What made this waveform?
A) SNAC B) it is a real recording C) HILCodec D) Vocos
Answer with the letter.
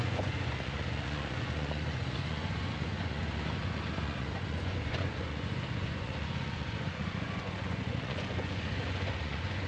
D